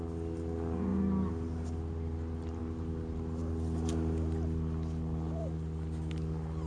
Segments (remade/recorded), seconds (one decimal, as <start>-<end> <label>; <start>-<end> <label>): 0.0-6.7 recorded